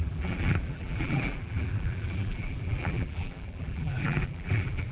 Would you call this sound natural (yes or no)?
no